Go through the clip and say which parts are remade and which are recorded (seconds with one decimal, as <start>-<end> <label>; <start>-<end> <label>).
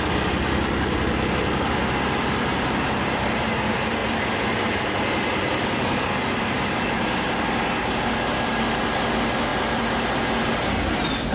0.0-11.3 recorded